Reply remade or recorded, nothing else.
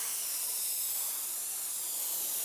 recorded